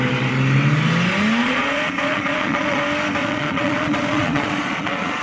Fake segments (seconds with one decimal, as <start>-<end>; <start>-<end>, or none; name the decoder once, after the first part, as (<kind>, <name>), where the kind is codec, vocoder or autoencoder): 1.4-2.8 (vocoder, Vocos); 3.2-5.2